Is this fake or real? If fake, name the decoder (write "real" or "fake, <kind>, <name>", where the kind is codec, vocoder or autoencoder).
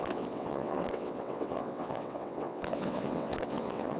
fake, vocoder, WaveNeXt